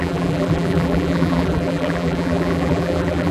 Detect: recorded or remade remade